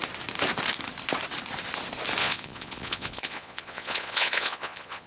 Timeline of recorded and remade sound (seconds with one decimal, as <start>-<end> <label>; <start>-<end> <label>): 0.0-2.2 recorded; 2.2-5.1 remade